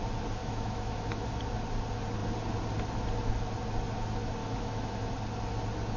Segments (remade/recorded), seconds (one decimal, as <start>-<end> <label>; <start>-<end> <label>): 0.0-0.4 recorded; 0.4-1.4 remade; 1.4-4.4 recorded; 4.4-5.1 remade; 5.1-6.0 recorded